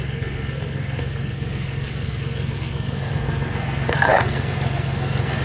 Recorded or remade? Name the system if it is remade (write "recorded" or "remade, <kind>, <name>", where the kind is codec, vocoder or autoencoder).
remade, codec, SNAC